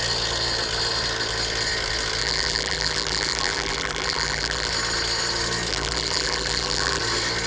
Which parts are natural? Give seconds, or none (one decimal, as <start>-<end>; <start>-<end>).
0.0-2.2; 4.7-5.7; 7.0-7.5